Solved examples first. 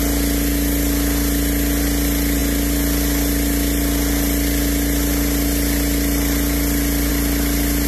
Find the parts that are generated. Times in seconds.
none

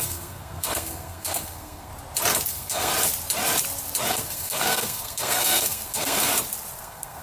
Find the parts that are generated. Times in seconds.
0.0-1.9; 2.5-2.9; 4.1-6.3; 6.8-7.2

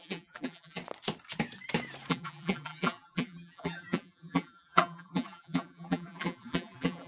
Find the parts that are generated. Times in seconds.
0.0-0.8; 2.1-7.1